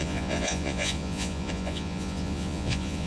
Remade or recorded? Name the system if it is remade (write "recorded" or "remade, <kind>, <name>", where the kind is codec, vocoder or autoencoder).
remade, vocoder, Vocos